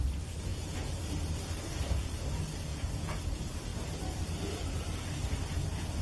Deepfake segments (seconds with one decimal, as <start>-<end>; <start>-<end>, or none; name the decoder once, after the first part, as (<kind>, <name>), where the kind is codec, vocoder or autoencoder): 0.5-1.0 (vocoder, Vocos); 2.7-3.2